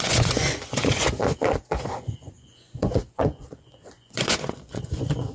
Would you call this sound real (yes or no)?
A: no